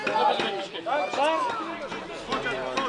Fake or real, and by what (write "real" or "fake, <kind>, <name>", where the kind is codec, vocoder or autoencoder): real